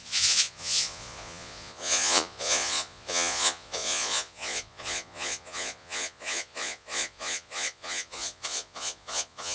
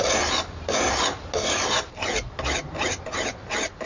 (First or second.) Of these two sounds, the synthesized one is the first